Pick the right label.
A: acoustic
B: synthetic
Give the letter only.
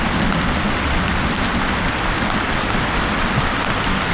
B